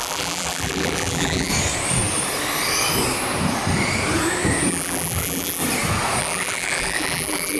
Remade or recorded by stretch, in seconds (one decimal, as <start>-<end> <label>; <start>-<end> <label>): 0.0-1.5 remade; 1.5-4.7 recorded; 4.7-5.6 remade; 5.6-6.2 recorded; 6.2-7.6 remade